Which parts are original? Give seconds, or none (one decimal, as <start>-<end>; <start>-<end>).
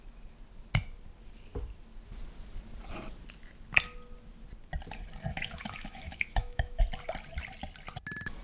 0.0-5.3; 6.8-8.4